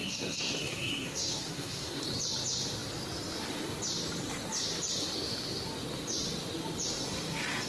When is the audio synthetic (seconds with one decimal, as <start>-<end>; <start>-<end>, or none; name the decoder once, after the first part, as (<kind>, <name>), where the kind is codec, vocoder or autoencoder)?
0.0-2.0 (codec, SNAC)